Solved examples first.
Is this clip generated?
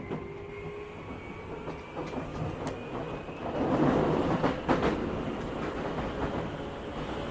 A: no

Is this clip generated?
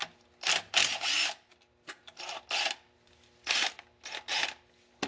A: no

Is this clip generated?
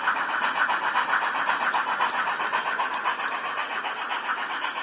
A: no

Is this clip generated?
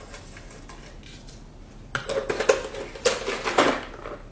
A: no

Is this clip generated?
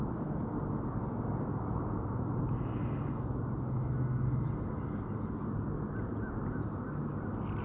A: no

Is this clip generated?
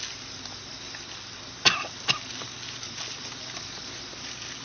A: no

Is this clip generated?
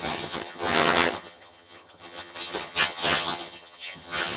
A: yes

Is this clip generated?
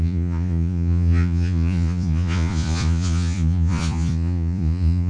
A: yes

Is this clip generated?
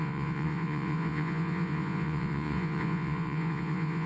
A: yes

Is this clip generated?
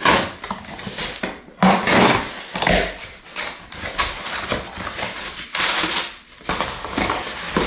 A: no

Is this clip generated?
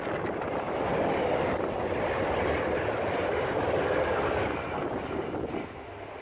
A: no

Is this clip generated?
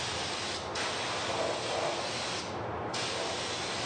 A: no